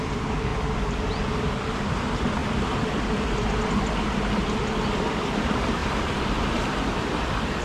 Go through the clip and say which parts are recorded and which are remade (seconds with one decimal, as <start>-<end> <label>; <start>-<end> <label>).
0.0-0.5 remade; 0.5-1.7 recorded; 1.7-2.4 remade; 2.4-5.2 recorded; 5.2-7.6 remade

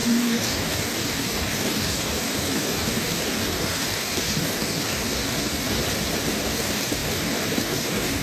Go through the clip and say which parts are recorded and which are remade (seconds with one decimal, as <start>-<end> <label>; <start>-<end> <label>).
0.0-5.8 remade; 5.8-6.3 recorded; 6.3-8.2 remade

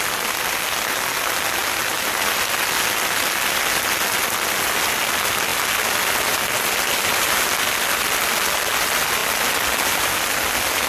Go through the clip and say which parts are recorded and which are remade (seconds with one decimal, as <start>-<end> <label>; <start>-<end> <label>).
0.0-10.9 recorded

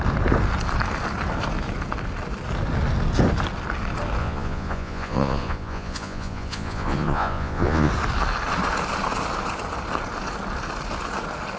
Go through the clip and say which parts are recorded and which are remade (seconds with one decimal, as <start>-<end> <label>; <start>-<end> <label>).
0.0-4.2 recorded; 4.2-7.9 remade; 7.9-11.6 recorded

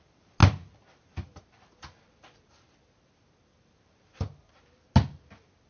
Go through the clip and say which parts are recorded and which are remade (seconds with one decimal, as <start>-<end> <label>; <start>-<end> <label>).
0.0-5.7 recorded

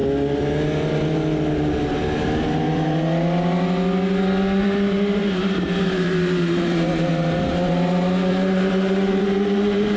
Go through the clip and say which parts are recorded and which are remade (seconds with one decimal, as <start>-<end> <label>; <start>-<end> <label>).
0.0-4.6 recorded; 4.6-7.1 remade; 7.1-8.3 recorded; 8.3-10.0 remade

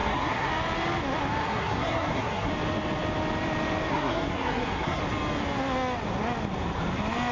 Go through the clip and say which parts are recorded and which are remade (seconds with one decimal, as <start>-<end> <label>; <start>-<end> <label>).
0.0-0.5 remade; 0.5-1.4 recorded; 1.4-2.5 remade; 2.5-3.9 recorded; 3.9-5.0 remade; 5.0-7.3 recorded